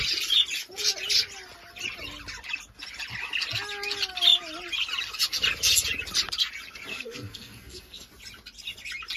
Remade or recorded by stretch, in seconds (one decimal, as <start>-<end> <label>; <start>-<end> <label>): 0.0-6.9 recorded; 6.9-8.1 remade; 8.1-9.2 recorded